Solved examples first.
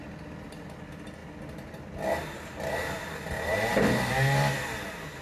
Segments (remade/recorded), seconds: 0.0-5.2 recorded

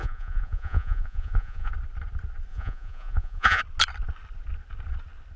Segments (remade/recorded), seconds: 0.0-1.7 remade; 1.7-2.5 recorded; 2.5-3.6 remade; 3.6-5.4 recorded

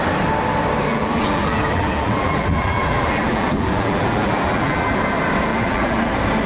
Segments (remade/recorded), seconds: 0.0-0.9 recorded; 0.9-4.8 remade; 4.8-5.5 recorded; 5.5-6.1 remade; 6.1-6.5 recorded